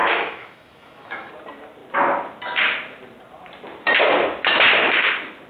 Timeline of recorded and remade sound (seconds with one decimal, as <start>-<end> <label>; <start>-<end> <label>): 0.0-1.3 remade; 1.3-5.5 recorded